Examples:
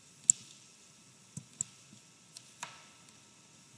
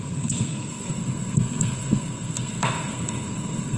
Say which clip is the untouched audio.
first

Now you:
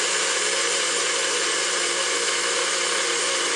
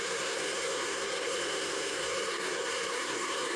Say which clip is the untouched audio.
first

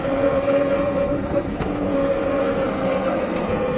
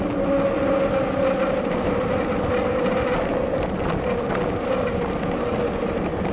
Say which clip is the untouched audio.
second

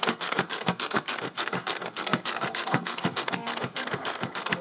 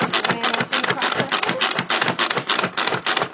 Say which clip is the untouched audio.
second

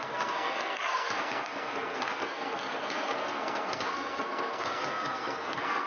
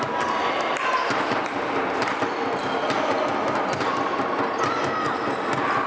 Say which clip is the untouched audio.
second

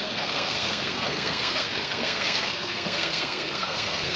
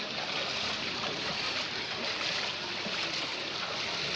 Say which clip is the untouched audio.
second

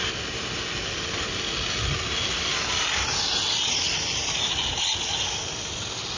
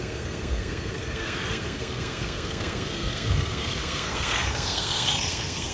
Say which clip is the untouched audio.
first